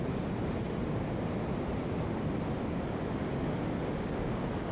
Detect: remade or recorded recorded